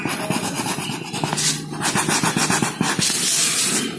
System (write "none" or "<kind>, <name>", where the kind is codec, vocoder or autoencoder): none